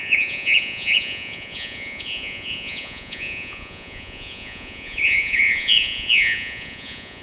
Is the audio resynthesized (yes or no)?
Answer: yes